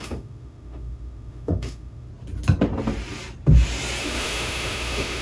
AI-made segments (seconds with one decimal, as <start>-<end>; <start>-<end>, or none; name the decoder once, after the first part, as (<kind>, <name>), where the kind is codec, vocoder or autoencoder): 0.0-2.1 (autoencoder, DAC-VAE); 4.0-5.2